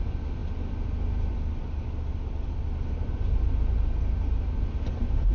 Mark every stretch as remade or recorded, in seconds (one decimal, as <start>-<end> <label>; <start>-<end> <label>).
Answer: 0.0-5.3 recorded